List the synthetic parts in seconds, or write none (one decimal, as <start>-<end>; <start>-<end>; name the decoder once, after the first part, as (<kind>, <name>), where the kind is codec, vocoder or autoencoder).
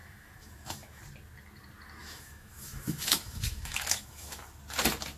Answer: 0.0-1.0 (autoencoder, DAC-VAE); 2.0-4.4